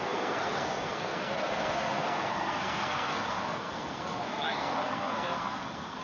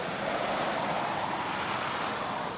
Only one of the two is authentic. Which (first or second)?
second